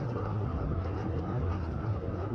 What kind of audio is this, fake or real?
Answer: fake